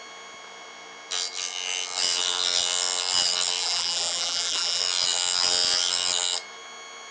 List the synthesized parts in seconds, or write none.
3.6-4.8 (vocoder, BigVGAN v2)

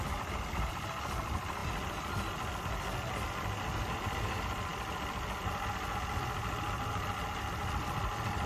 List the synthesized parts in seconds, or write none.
none